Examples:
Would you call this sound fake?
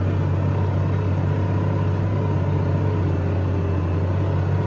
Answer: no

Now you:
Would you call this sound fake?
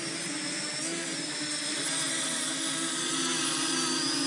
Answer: no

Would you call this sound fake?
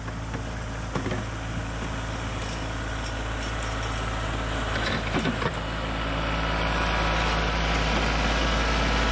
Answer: no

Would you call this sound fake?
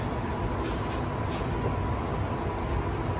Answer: no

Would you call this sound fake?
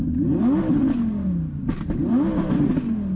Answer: no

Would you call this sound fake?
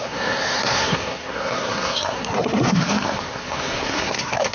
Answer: yes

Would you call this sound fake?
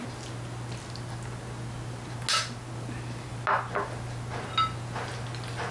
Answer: no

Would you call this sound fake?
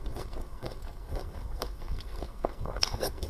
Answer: yes